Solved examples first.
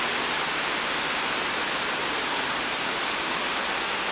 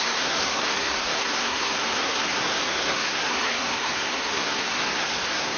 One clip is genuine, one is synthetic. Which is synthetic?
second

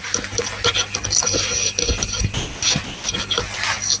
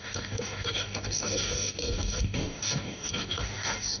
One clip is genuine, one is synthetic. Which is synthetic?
second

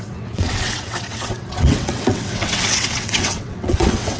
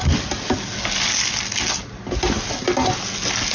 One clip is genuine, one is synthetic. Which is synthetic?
first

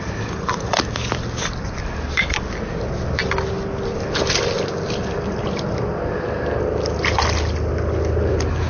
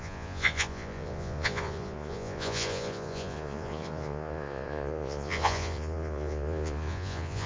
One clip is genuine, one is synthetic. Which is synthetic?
second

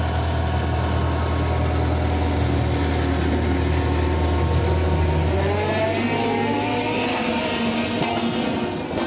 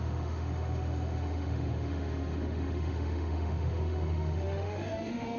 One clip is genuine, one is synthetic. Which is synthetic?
second